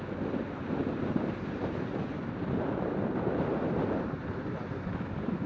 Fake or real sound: real